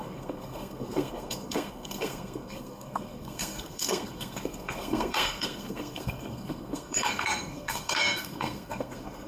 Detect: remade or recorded remade